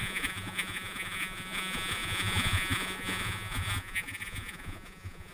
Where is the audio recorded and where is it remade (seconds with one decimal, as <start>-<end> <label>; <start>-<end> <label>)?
0.0-5.3 remade